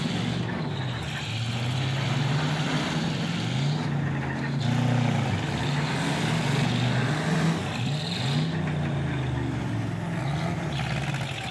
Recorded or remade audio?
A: recorded